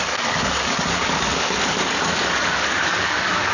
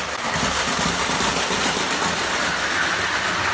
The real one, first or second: second